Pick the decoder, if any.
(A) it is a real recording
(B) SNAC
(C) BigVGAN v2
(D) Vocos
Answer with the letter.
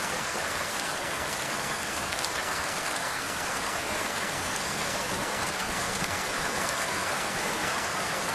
B